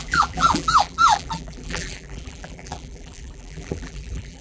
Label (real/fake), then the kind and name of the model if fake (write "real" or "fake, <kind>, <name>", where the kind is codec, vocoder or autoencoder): fake, vocoder, BigVGAN v2